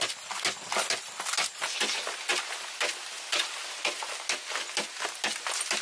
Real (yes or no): yes